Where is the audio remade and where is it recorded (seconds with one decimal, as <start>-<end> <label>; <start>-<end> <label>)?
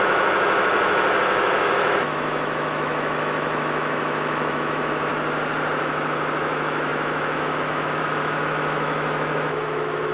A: 0.0-5.1 remade; 5.1-5.8 recorded; 5.8-10.1 remade